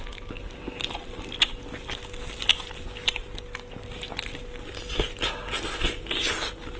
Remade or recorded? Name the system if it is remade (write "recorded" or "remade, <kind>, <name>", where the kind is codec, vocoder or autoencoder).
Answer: recorded